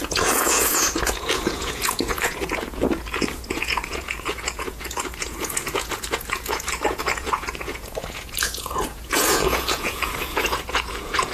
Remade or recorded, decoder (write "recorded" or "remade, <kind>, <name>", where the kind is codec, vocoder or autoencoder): remade, vocoder, Vocos